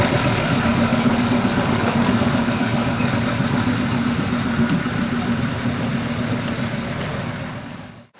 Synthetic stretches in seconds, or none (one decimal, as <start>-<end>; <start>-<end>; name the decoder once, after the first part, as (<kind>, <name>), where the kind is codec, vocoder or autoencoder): 0.0-3.3 (codec, DAC); 7.6-8.2